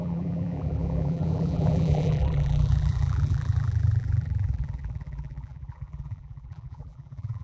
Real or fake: fake